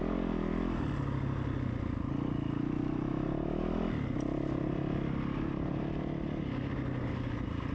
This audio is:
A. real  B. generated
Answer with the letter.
A